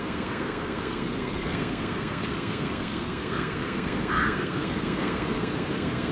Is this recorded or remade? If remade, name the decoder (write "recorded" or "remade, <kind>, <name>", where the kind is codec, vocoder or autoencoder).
remade, codec, SNAC